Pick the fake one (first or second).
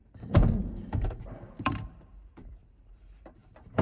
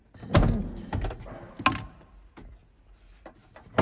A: first